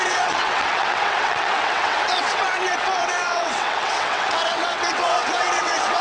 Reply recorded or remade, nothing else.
remade